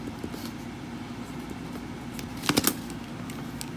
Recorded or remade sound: recorded